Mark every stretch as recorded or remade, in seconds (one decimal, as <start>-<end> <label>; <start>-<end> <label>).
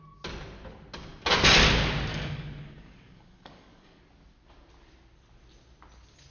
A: 0.0-2.1 recorded; 2.1-4.0 remade; 4.0-6.3 recorded